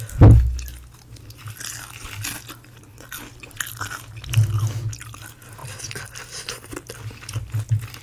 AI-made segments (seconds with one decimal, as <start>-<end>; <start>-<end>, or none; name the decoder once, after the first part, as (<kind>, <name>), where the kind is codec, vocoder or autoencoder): 5.6-7.0 (vocoder, BigVGAN v2)